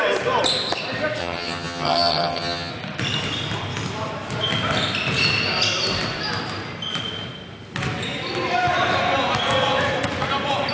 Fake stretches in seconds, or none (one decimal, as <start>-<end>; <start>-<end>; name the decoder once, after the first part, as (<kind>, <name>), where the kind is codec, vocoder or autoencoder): 1.2-2.7 (vocoder, HiFi-GAN)